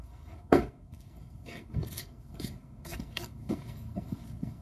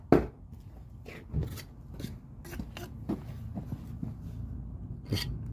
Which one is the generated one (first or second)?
first